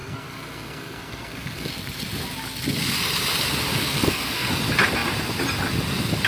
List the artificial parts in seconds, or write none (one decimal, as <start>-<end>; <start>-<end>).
0.0-1.7; 3.7-4.5